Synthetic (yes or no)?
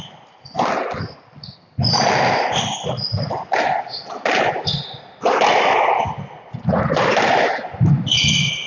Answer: no